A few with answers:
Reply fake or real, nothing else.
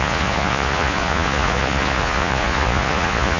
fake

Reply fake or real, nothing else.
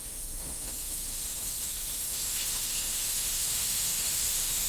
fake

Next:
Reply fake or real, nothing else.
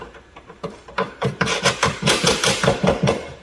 fake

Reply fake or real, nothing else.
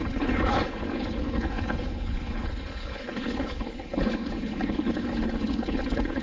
fake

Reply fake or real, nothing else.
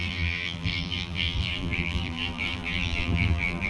fake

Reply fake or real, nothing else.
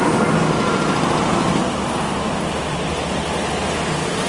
real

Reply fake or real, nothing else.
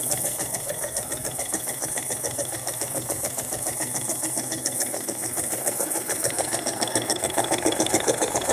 fake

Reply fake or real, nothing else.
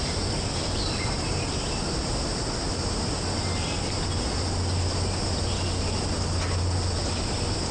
real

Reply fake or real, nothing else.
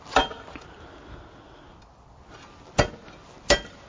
real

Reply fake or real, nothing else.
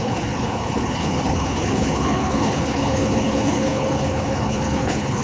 fake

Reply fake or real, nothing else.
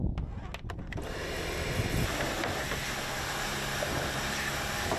real